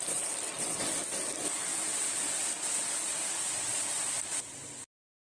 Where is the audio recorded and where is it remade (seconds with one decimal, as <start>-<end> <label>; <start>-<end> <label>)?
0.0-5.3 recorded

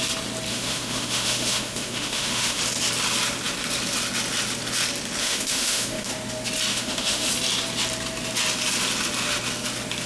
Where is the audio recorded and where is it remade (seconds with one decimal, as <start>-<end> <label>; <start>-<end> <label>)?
0.0-0.5 recorded; 0.5-2.6 remade; 2.6-5.2 recorded; 5.2-6.1 remade; 6.1-6.7 recorded; 6.7-7.3 remade; 7.3-10.1 recorded

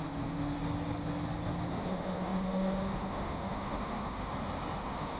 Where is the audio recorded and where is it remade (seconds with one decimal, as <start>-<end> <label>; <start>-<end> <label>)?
0.0-0.6 remade; 0.6-1.7 recorded; 1.7-4.3 remade; 4.3-4.8 recorded; 4.8-5.2 remade

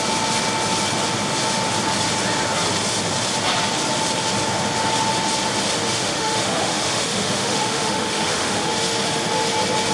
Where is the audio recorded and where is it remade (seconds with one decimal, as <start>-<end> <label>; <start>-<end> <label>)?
0.0-5.9 recorded; 5.9-8.7 remade; 8.7-9.9 recorded

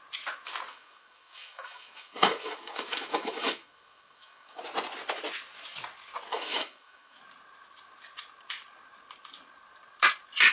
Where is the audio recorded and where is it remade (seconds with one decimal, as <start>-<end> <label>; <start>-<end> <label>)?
0.0-0.7 recorded; 0.7-4.6 remade; 4.6-6.3 recorded; 6.3-7.2 remade; 7.2-10.5 recorded

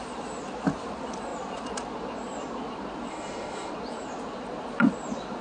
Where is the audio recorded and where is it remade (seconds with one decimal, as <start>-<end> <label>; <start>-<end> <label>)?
0.0-3.1 recorded; 3.1-3.7 remade; 3.7-5.4 recorded

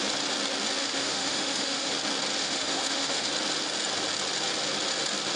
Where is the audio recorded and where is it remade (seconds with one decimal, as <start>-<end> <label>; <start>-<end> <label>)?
0.0-0.8 recorded; 0.8-1.9 remade; 1.9-2.4 recorded; 2.4-3.3 remade; 3.3-5.4 recorded